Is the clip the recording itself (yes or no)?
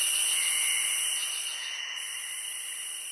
yes